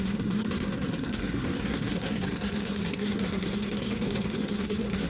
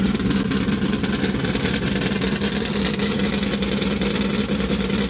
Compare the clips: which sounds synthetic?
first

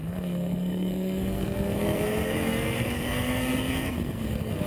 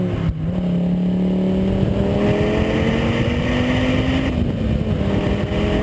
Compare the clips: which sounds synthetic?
first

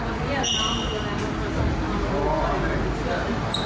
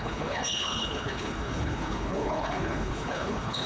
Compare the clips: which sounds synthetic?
second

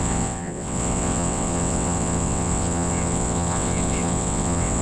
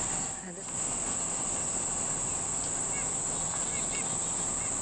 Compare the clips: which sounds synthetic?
first